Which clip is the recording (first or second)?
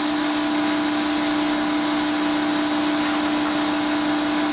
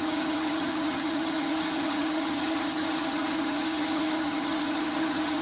first